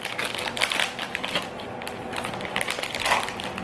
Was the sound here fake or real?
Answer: real